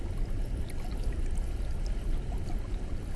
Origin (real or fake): real